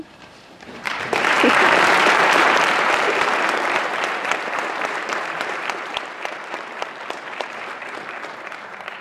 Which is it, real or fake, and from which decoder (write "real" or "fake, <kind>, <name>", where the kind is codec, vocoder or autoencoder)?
fake, vocoder, BigVGAN v2